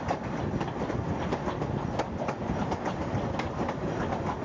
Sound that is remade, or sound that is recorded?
recorded